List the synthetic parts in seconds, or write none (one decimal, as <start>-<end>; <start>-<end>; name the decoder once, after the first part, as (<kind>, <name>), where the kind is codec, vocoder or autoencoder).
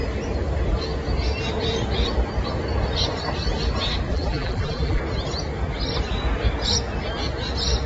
4.1-5.0 (vocoder, BigVGAN v2)